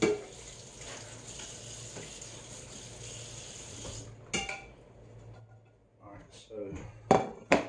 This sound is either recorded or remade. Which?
recorded